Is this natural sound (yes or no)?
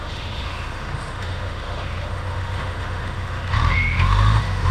no